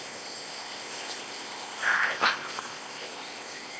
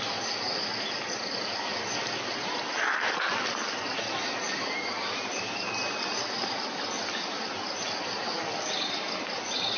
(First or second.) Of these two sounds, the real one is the second